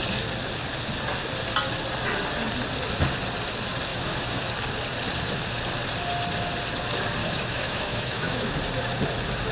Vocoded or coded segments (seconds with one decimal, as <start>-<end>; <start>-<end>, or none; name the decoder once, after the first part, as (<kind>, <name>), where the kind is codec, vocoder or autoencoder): 3.9-4.4 (autoencoder, DAC-VAE); 7.2-8.5